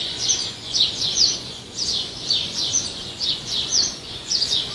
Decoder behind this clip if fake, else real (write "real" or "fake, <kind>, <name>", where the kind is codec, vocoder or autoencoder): fake, vocoder, Vocos